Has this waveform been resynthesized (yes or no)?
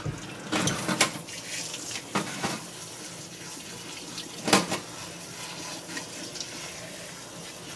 no